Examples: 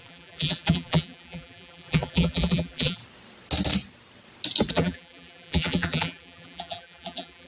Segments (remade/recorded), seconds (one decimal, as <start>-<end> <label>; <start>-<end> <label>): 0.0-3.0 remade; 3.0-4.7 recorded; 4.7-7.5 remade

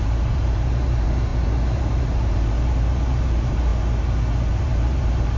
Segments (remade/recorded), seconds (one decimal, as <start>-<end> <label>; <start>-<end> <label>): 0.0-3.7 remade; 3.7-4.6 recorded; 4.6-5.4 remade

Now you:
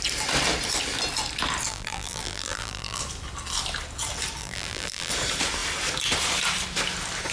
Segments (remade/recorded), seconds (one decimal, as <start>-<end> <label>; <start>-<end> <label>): 0.0-1.7 recorded; 1.7-3.0 remade; 3.0-4.4 recorded; 4.4-5.1 remade; 5.1-7.3 recorded

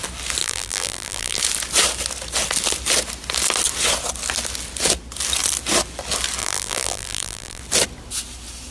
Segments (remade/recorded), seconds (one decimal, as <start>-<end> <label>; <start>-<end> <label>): 0.0-0.4 recorded; 0.4-1.4 remade; 1.4-6.4 recorded; 6.4-7.6 remade; 7.6-8.7 recorded